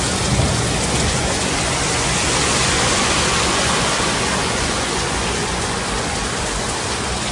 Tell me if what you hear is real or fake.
fake